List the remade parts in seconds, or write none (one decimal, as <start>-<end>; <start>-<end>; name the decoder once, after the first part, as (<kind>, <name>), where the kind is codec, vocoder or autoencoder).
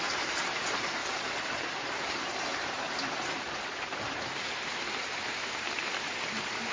0.0-6.7 (vocoder, BigVGAN v2)